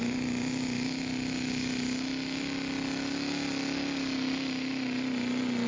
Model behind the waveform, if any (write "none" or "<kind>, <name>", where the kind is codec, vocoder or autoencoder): none